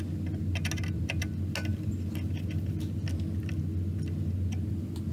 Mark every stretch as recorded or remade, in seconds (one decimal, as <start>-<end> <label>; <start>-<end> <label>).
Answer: 0.0-5.1 recorded